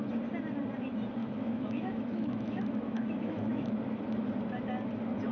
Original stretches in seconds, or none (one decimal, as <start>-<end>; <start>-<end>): 0.0-1.2; 3.8-5.3